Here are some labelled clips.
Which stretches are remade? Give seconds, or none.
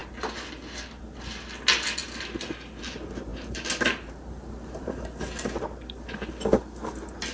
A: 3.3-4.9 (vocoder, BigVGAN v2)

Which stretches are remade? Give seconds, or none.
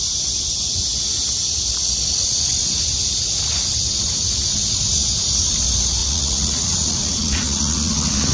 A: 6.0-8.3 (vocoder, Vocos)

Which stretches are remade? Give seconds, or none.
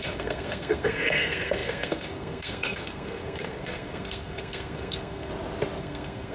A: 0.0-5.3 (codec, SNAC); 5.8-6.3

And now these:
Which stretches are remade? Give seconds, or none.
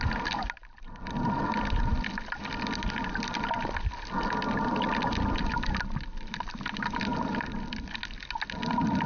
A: 0.6-1.4 (vocoder, BigVGAN v2); 7.1-7.9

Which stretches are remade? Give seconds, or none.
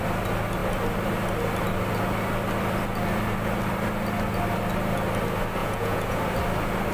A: 5.6-6.2 (vocoder, Vocos)